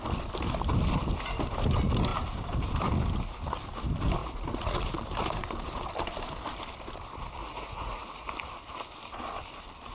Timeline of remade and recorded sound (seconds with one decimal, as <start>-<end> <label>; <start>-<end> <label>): 0.0-4.2 recorded; 4.2-4.8 remade; 4.8-7.4 recorded; 7.4-8.3 remade; 8.3-9.9 recorded